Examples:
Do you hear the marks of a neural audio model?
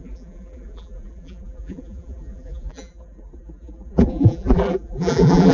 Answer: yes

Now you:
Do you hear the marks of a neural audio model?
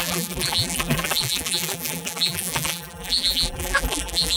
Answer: yes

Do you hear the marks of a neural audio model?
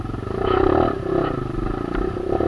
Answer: yes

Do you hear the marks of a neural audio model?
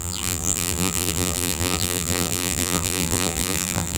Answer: yes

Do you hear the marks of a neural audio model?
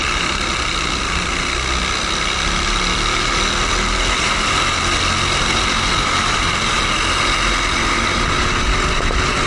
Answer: no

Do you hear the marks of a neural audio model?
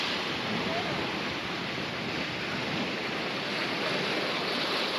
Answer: no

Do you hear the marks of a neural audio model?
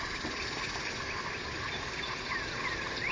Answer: yes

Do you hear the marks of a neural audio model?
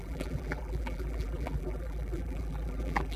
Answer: yes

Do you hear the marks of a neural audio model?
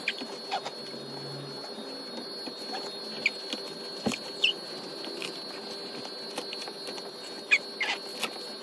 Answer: no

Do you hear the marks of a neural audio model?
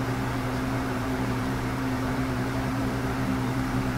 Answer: yes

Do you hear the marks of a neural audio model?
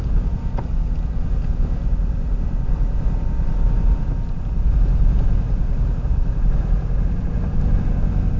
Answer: no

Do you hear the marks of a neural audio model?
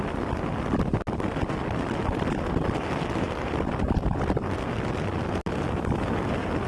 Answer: no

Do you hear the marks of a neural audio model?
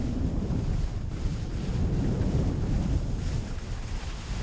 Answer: no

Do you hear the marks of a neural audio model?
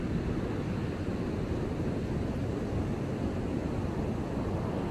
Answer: no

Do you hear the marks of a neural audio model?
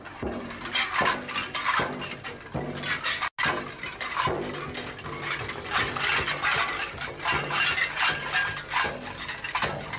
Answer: no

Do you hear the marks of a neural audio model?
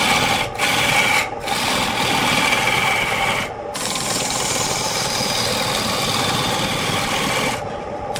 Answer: no